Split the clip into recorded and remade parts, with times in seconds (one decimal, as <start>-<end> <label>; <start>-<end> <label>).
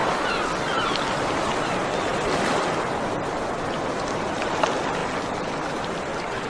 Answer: 0.0-6.5 recorded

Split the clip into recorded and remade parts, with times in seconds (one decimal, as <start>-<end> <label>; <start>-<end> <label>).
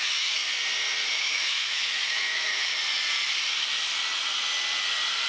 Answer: 0.0-0.4 remade; 0.4-1.1 recorded; 1.1-2.7 remade; 2.7-5.3 recorded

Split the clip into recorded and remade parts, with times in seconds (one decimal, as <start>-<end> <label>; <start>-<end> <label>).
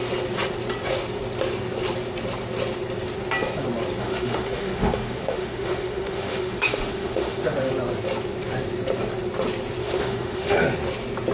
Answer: 0.0-4.0 recorded; 4.0-7.7 remade; 7.7-9.8 recorded; 9.8-10.6 remade; 10.6-11.3 recorded